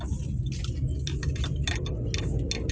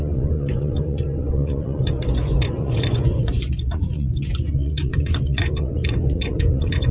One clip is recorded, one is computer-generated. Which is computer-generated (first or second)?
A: second